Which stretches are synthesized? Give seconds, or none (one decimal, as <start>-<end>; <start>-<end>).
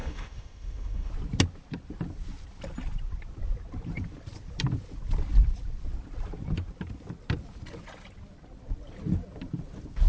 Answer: 0.0-1.1